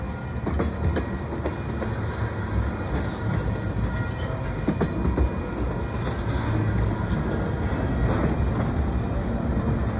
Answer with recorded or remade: recorded